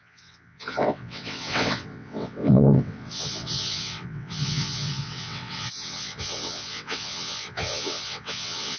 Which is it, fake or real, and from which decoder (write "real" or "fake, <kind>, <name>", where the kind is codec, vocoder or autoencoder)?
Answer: fake, vocoder, WaveNeXt